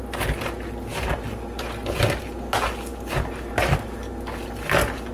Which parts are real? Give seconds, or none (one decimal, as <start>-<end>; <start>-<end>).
0.0-5.1